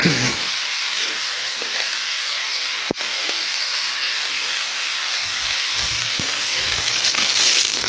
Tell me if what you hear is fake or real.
fake